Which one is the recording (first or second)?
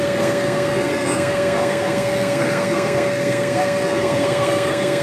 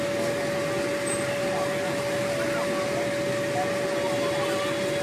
second